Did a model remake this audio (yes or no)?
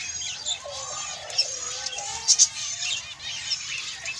no